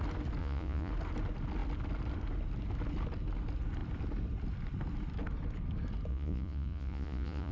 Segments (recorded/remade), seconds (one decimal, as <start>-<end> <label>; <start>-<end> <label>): 0.0-0.4 recorded; 0.4-0.9 remade; 0.9-6.1 recorded; 6.1-7.5 remade